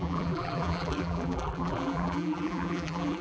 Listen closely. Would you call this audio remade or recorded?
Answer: remade